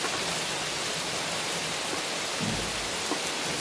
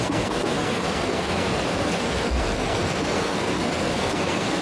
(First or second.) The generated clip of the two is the second